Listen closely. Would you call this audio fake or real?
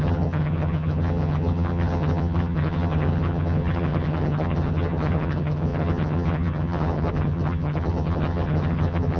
fake